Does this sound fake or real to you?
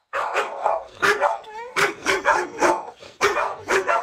fake